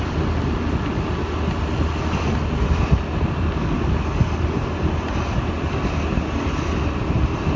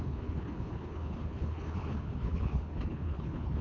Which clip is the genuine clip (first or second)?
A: first